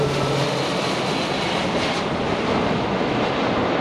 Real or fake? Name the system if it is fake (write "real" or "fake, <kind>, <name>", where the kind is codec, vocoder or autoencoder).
real